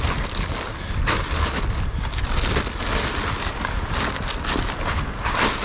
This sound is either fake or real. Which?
real